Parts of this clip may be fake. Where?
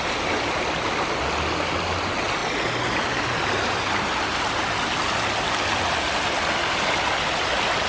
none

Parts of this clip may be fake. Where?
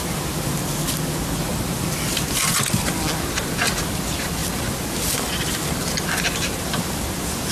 none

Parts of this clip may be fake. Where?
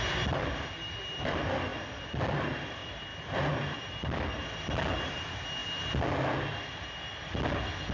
none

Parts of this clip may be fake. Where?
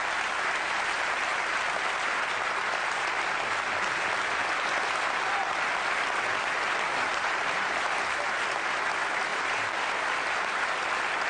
7.1-7.8 (vocoder, BigVGAN v2); 9.3-9.8